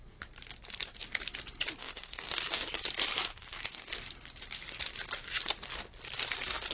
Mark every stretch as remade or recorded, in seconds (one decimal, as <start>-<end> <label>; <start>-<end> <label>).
0.0-1.8 recorded; 1.8-2.6 remade; 2.6-3.3 recorded; 3.3-3.9 remade; 3.9-6.7 recorded